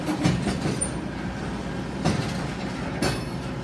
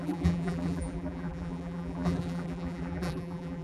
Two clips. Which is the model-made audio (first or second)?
second